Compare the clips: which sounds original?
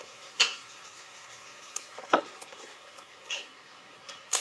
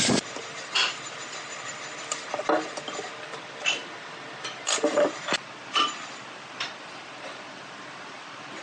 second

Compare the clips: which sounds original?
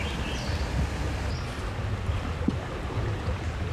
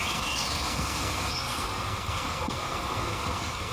first